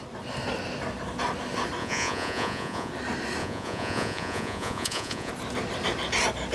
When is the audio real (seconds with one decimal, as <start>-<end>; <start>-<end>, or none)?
0.0-1.8; 2.9-3.4; 5.3-6.5